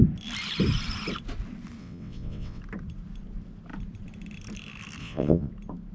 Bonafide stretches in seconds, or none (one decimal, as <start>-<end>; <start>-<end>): 0.0-1.8; 2.6-5.0; 5.5-5.9